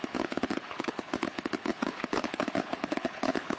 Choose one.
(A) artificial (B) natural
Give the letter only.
A